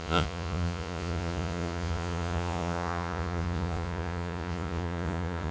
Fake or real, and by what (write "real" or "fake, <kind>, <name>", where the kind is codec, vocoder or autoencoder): fake, vocoder, Vocos